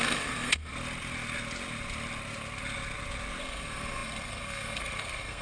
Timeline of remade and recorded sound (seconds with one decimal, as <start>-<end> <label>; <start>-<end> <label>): 0.0-0.7 remade; 0.7-3.4 recorded; 3.4-5.4 remade